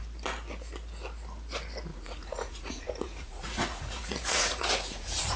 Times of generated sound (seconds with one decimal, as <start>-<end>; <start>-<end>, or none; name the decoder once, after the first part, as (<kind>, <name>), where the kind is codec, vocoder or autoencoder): 1.9-5.4 (vocoder, Vocos)